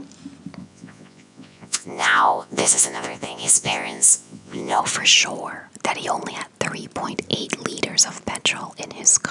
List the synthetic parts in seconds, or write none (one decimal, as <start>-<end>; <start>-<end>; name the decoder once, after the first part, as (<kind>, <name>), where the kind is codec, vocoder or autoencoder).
0.6-4.8 (vocoder, Vocos)